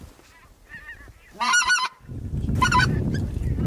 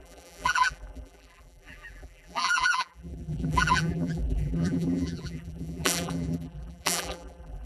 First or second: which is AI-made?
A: second